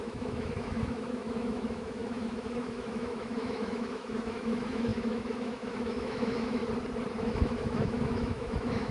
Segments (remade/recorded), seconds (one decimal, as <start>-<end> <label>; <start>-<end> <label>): 0.0-6.6 remade; 6.6-7.1 recorded; 7.1-8.9 remade